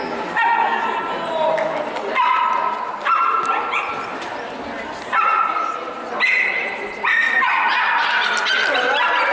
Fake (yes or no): no